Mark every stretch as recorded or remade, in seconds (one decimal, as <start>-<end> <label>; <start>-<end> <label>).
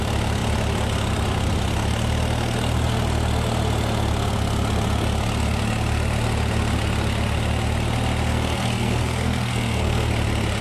0.0-8.3 recorded; 8.3-10.1 remade; 10.1-10.6 recorded